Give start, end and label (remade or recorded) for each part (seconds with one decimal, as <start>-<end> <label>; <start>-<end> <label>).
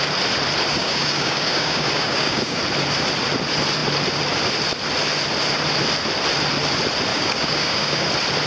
0.0-0.8 recorded; 0.8-2.6 remade; 2.6-7.1 recorded; 7.1-8.1 remade; 8.1-8.5 recorded